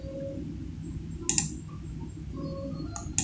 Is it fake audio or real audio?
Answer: real